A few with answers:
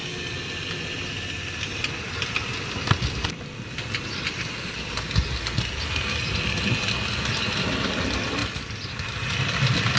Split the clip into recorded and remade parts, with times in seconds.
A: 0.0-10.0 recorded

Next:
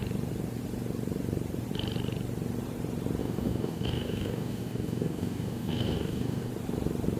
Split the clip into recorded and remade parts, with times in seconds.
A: 0.0-3.2 recorded; 3.2-6.5 remade; 6.5-7.2 recorded

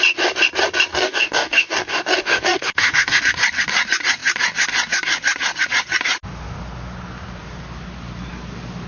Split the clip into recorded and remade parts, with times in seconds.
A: 0.0-0.9 recorded; 0.9-3.2 remade; 3.2-8.9 recorded

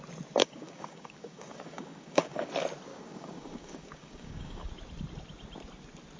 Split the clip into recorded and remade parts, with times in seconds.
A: 0.0-0.4 recorded; 0.4-2.5 remade; 2.5-2.9 recorded; 2.9-4.7 remade; 4.7-6.2 recorded

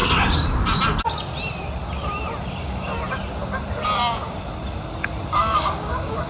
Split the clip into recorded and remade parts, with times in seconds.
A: 0.0-2.5 recorded; 2.5-2.9 remade; 2.9-5.3 recorded; 5.3-6.3 remade

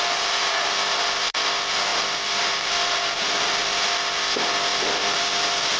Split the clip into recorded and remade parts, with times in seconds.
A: 0.0-5.8 recorded